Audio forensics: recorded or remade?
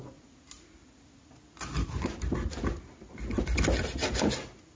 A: recorded